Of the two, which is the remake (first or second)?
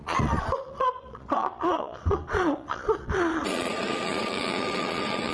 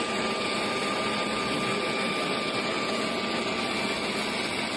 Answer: first